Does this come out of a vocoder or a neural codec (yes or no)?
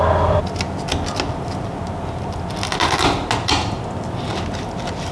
no